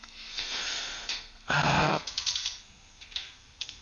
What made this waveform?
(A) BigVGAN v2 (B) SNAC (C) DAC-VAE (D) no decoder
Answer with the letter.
B